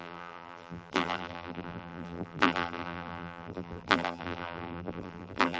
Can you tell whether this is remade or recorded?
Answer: remade